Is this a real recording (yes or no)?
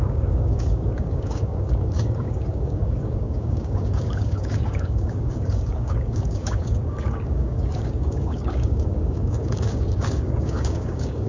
no